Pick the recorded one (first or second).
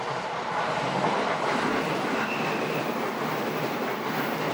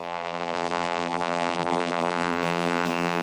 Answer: first